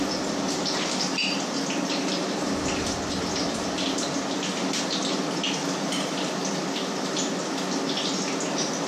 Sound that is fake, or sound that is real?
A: real